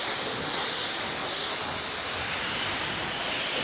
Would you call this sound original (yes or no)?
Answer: yes